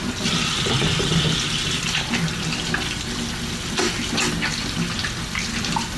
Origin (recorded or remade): recorded